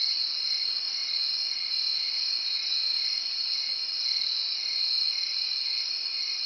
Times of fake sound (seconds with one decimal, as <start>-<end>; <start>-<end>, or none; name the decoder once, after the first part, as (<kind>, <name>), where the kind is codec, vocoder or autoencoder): none